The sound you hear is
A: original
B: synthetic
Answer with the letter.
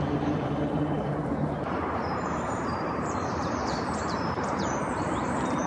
B